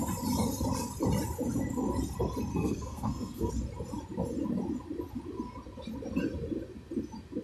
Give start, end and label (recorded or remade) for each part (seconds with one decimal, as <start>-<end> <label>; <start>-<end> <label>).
0.0-2.5 recorded; 2.5-3.5 remade; 3.5-7.4 recorded